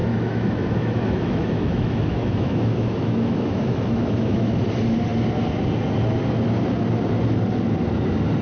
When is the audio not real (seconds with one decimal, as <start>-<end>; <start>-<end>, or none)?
0.0-4.6